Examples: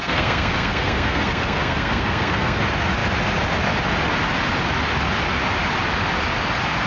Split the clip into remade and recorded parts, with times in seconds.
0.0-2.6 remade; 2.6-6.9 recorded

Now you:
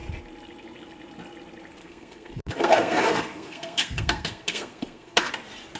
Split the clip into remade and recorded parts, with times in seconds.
0.0-1.8 recorded; 1.8-5.3 remade; 5.3-5.8 recorded

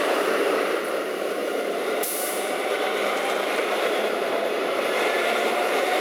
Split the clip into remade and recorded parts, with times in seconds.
0.0-6.0 remade

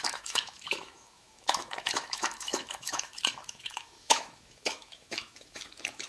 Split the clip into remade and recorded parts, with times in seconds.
0.0-6.1 remade

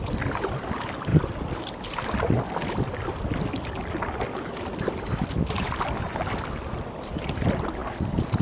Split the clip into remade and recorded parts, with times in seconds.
0.0-8.4 recorded

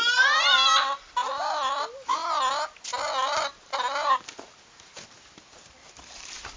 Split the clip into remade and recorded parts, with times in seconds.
0.0-6.6 recorded